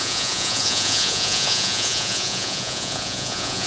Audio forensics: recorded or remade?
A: remade